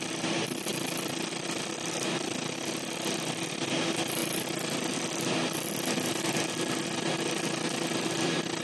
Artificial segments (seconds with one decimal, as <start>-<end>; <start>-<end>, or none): none